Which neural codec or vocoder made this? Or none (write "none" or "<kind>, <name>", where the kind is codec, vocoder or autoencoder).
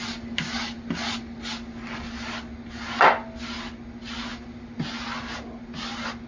none